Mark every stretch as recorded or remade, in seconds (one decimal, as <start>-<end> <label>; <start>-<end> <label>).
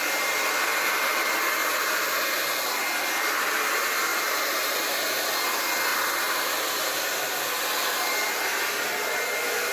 0.0-1.6 recorded; 1.6-2.8 remade; 2.8-4.1 recorded; 4.1-5.3 remade; 5.3-5.9 recorded; 5.9-7.4 remade; 7.4-9.7 recorded